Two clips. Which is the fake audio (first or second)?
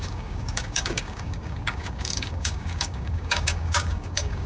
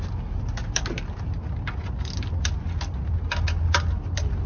first